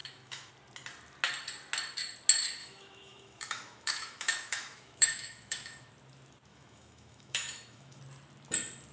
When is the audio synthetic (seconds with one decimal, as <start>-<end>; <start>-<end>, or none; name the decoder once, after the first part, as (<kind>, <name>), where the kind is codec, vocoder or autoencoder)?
0.0-0.5 (autoencoder, DAC-VAE); 2.6-5.9; 6.5-8.0